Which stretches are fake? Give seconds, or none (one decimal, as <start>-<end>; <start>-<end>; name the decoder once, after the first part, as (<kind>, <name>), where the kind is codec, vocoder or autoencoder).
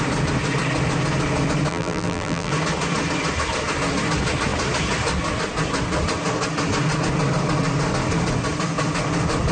1.7-2.5 (vocoder, BigVGAN v2)